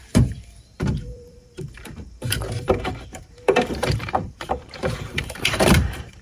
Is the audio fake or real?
fake